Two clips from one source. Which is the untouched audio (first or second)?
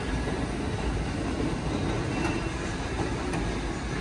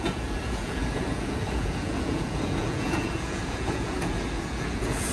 first